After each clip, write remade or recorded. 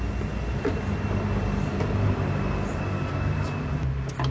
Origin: recorded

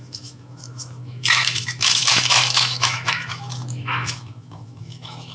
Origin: remade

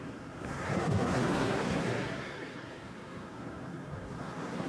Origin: remade